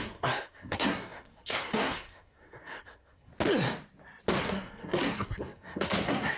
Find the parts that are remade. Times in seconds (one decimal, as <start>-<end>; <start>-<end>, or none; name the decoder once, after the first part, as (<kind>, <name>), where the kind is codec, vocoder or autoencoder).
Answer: 0.0-3.3 (codec, SNAC); 4.4-6.4